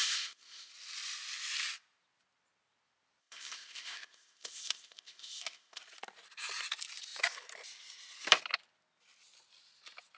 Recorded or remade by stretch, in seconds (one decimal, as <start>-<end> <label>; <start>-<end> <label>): 0.0-0.7 remade; 0.7-3.2 recorded; 3.2-5.8 remade; 5.8-10.2 recorded